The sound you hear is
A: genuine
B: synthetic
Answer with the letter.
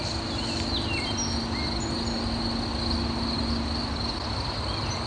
A